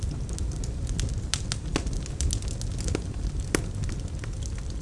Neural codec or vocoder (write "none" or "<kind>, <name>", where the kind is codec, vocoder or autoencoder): none